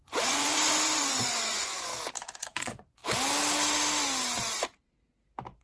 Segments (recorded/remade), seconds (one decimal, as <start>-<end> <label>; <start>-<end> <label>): 0.0-1.9 remade; 1.9-2.4 recorded; 2.4-3.0 remade; 3.0-5.6 recorded